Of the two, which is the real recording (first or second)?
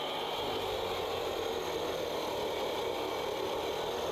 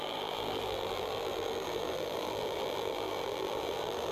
first